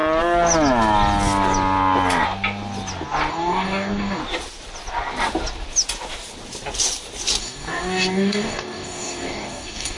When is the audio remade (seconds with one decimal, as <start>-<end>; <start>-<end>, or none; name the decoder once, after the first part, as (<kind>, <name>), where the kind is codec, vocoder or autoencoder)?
3.3-4.2 (codec, DAC); 7.4-10.0